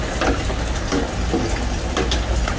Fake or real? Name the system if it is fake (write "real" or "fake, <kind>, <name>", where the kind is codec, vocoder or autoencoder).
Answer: real